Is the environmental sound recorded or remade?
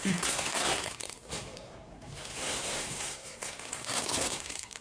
remade